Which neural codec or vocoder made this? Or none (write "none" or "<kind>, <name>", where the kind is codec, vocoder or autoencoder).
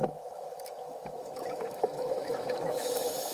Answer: autoencoder, DAC-VAE